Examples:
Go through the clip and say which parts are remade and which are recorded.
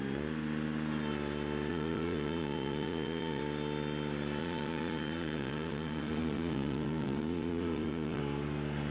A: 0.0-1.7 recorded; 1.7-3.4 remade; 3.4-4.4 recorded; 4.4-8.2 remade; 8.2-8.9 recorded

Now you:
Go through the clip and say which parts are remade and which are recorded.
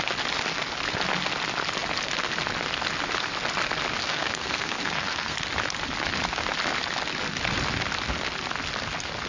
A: 0.0-4.0 recorded; 4.0-5.4 remade; 5.4-9.3 recorded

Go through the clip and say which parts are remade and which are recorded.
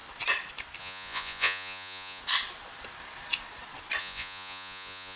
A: 0.0-0.8 recorded; 0.8-2.2 remade; 2.2-4.0 recorded; 4.0-5.2 remade